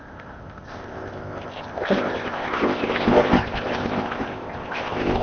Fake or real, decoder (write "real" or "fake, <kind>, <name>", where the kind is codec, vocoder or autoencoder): fake, codec, ZipCodec